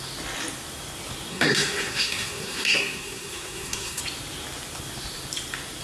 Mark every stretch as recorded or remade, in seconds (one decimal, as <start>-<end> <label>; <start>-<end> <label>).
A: 0.0-1.3 recorded; 1.3-4.0 remade; 4.0-5.8 recorded